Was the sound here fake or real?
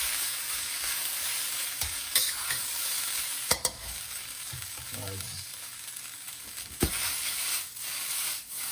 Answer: fake